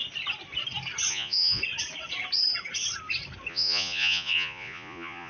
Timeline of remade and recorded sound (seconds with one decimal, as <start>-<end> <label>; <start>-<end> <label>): 0.0-1.1 recorded; 1.1-1.6 remade; 1.6-3.5 recorded; 3.5-5.3 remade